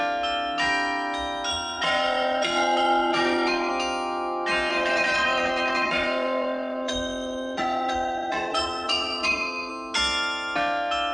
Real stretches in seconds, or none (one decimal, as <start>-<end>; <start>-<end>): 0.0-1.5; 3.7-4.7; 9.7-11.1